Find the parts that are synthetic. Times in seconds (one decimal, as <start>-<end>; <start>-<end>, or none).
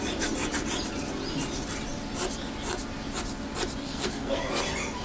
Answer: 3.8-4.5